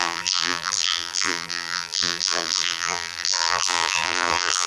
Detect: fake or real fake